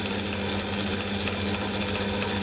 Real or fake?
real